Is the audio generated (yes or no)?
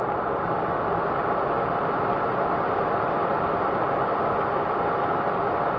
no